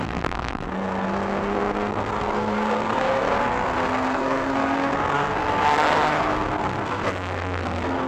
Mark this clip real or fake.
fake